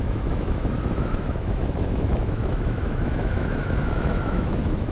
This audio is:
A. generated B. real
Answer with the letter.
A